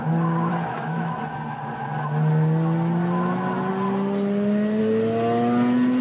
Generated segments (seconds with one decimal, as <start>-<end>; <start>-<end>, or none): 0.5-1.2

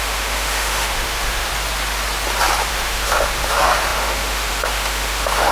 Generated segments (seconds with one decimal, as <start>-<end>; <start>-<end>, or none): 0.0-1.5; 2.7-5.5

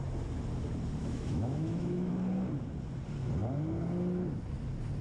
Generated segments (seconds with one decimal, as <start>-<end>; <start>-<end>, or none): 1.0-2.1

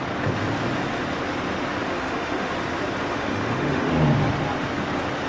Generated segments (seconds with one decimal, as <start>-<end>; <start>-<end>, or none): 1.9-2.5; 3.1-3.9

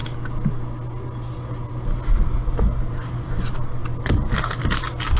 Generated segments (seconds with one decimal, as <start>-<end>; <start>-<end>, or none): none

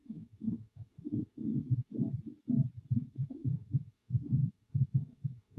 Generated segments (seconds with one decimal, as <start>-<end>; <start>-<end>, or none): 0.0-1.9; 2.9-5.6